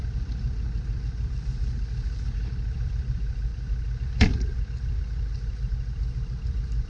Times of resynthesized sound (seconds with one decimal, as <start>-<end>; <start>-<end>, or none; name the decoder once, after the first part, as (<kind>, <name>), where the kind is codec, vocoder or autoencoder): none